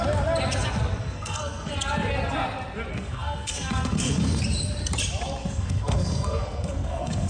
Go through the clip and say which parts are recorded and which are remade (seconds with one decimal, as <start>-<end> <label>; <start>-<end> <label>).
0.0-1.0 recorded; 1.0-1.7 remade; 1.7-2.9 recorded; 2.9-4.4 remade; 4.4-5.4 recorded; 5.4-7.3 remade